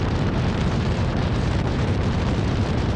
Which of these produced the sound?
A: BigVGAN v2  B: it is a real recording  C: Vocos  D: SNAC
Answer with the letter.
A